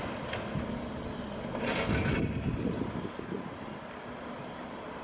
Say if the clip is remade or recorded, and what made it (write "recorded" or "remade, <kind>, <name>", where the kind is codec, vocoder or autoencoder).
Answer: recorded